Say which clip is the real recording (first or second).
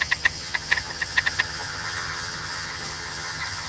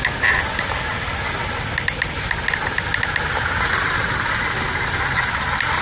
second